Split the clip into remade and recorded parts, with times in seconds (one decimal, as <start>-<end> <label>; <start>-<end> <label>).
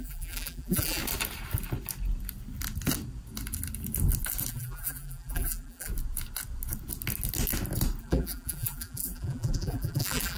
0.0-1.0 remade; 1.0-4.5 recorded; 4.5-5.9 remade; 5.9-8.0 recorded; 8.0-10.4 remade